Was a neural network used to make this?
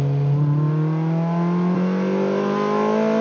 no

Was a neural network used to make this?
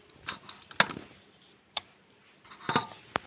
no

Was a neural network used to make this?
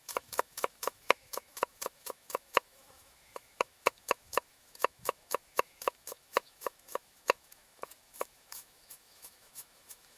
yes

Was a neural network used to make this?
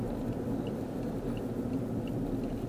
no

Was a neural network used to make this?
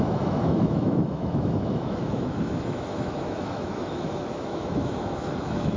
yes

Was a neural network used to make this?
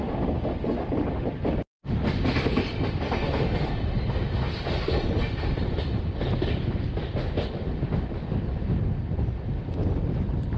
no